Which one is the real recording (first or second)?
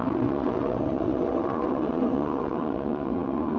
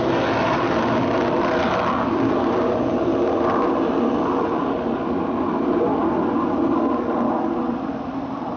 second